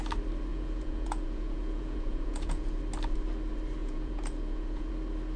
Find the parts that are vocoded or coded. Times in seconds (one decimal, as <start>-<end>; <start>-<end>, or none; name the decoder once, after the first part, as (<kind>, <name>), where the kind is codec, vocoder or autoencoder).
0.5-2.8 (vocoder, Vocos); 3.8-4.9